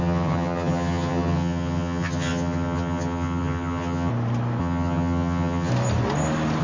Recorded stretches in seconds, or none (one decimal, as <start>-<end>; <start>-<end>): 4.1-4.6; 5.7-6.6